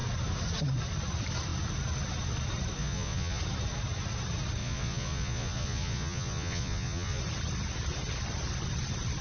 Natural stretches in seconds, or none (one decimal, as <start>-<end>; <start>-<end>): 0.0-2.8; 3.4-4.6; 7.2-9.2